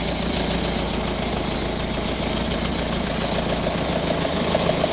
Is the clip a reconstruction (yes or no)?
no